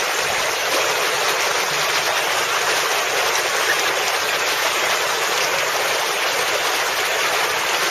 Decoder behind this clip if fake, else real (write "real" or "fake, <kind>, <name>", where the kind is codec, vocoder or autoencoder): real